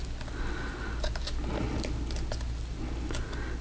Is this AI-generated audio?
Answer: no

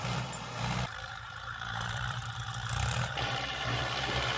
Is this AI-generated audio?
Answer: yes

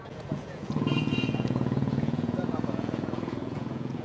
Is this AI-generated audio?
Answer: yes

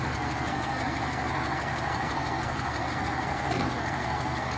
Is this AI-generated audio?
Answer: yes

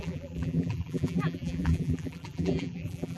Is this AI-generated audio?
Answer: yes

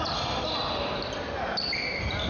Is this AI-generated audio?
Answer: no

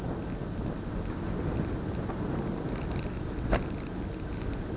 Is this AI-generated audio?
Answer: no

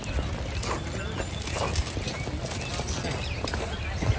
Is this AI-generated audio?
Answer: no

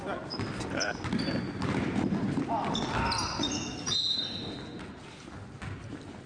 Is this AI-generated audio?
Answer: no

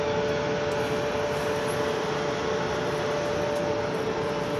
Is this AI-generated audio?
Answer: no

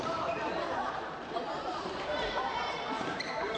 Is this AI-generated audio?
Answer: yes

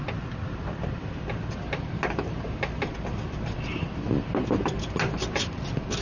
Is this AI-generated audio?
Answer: no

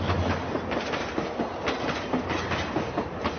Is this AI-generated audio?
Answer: no